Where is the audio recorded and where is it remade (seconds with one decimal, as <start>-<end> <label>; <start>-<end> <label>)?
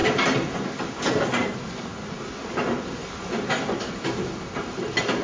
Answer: 0.0-5.2 recorded